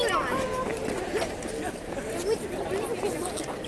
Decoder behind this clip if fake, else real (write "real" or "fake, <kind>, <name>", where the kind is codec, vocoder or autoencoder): real